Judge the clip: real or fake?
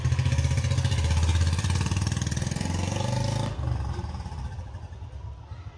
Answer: real